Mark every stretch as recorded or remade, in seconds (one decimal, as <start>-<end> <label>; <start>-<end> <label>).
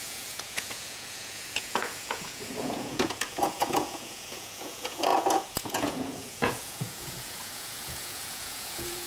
0.0-9.1 remade